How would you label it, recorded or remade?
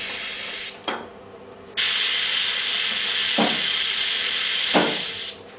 recorded